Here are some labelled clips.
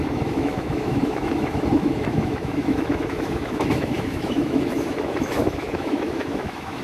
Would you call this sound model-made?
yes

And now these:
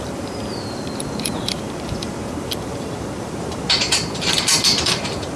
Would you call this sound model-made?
yes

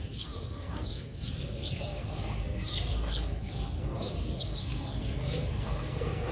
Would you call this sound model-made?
yes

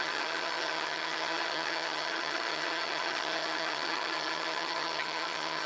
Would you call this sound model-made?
yes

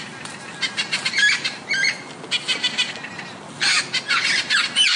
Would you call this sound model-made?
no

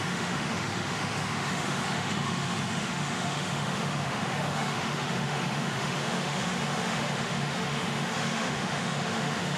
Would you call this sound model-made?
yes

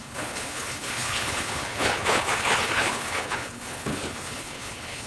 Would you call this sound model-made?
yes